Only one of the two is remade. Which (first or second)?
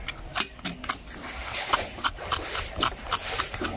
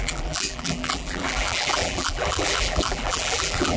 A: second